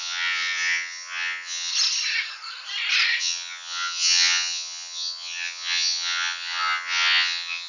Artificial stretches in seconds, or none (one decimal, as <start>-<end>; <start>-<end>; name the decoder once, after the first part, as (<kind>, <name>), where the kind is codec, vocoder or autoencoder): 0.0-1.7 (vocoder, WaveNeXt); 3.2-7.7